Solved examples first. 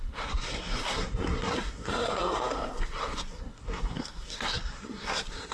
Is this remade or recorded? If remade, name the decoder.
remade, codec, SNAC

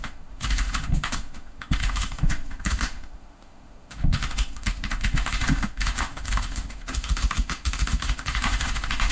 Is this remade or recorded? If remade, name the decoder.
remade, autoencoder, DAC-VAE